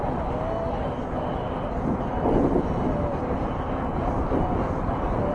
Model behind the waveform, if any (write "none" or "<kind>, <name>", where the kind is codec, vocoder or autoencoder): none